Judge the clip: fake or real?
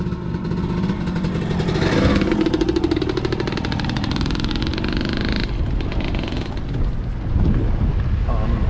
real